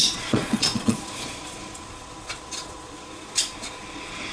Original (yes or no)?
no